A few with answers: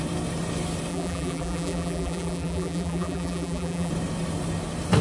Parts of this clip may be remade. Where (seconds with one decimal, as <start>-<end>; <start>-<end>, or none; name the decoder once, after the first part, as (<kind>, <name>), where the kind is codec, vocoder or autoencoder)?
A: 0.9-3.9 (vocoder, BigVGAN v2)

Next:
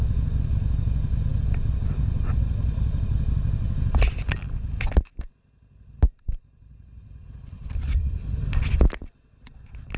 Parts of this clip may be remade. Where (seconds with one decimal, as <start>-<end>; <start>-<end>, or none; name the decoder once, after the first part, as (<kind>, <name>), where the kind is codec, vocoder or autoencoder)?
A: 7.2-9.0 (vocoder, BigVGAN v2)

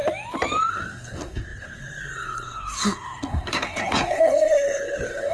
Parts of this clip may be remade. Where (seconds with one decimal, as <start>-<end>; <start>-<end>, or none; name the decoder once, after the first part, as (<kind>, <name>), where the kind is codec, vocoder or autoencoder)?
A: 0.7-5.3 (codec, SNAC)